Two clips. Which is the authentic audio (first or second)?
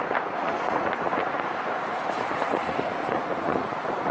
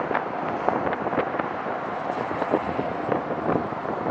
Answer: second